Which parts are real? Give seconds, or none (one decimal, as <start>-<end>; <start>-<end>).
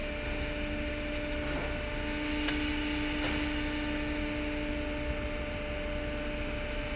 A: 0.0-7.0